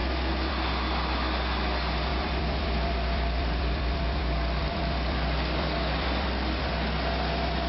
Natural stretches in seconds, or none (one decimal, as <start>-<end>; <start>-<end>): 0.0-2.1; 6.7-7.7